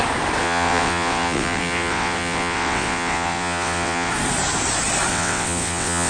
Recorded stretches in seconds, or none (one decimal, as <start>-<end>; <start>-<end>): 0.0-0.4; 4.1-5.1